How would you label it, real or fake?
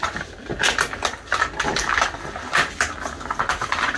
real